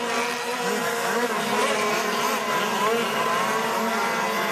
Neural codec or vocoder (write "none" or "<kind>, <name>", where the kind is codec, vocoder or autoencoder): none